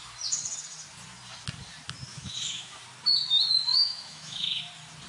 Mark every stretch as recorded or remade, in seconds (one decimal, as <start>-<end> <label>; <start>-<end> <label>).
0.0-2.1 recorded; 2.1-2.8 remade; 2.8-3.7 recorded; 3.7-4.6 remade; 4.6-5.1 recorded